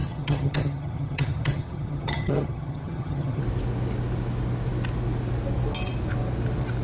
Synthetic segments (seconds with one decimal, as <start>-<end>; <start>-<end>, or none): 0.0-3.4